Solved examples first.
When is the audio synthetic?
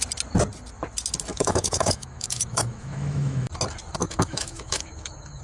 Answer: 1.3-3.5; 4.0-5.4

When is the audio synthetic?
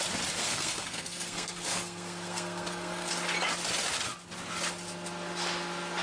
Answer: 0.4-3.1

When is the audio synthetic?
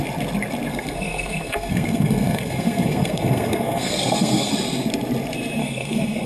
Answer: 0.7-4.5; 5.6-6.3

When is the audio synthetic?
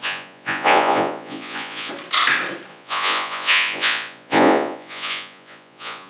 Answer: 0.0-1.9; 2.7-6.1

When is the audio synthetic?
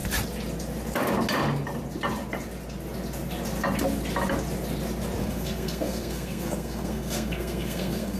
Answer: 5.2-8.2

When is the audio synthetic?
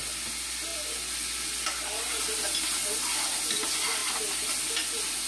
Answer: none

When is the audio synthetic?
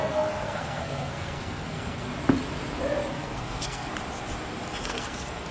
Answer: 0.0-2.1; 3.1-3.9; 4.8-5.5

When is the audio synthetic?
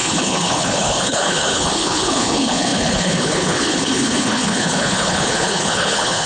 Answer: 0.0-6.3